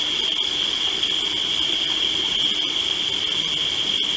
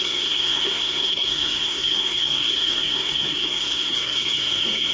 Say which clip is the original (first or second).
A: first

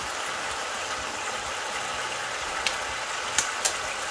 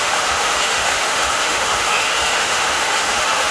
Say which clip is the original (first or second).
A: first